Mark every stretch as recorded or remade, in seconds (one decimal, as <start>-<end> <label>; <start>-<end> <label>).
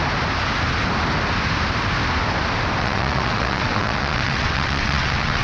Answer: 0.0-2.8 recorded; 2.8-5.4 remade